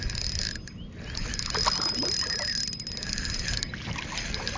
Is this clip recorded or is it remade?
recorded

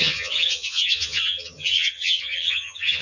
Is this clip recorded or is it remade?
remade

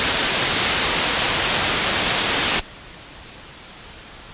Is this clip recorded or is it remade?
recorded